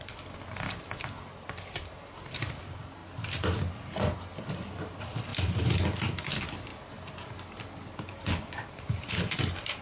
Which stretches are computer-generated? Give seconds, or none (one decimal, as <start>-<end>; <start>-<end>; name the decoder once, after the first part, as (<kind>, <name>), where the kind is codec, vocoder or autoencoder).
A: 0.0-3.0 (vocoder, BigVGAN v2); 4.5-9.8